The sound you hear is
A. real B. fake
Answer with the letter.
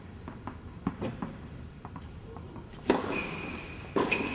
B